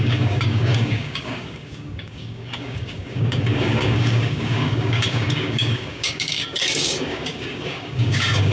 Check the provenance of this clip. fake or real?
fake